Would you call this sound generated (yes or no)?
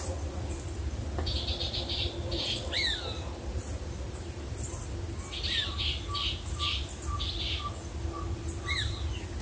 no